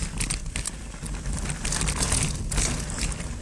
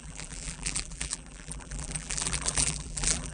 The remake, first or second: second